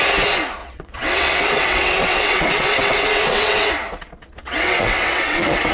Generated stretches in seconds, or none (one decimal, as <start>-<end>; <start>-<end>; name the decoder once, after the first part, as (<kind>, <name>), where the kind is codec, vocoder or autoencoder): 0.6-3.7 (vocoder, WaveNeXt); 4.4-5.7